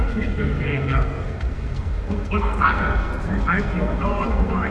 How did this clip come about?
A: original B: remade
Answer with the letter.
B